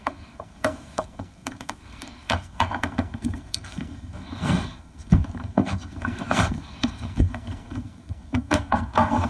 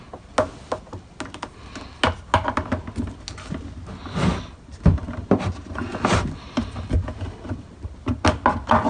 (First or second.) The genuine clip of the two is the second